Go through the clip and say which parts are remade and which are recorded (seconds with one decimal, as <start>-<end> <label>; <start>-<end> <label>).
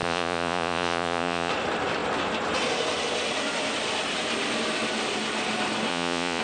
0.0-1.5 remade; 1.5-5.9 recorded; 5.9-6.4 remade